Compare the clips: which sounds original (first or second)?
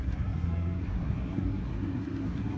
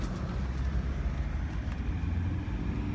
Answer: second